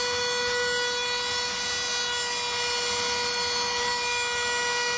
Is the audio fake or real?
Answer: real